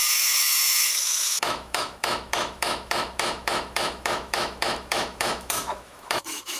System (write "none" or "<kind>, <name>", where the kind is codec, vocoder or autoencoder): autoencoder, DAC-VAE